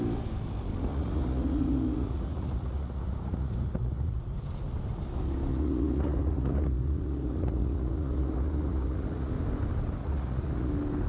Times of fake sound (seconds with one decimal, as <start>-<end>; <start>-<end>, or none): 0.9-4.3; 5.5-9.3; 10.0-10.7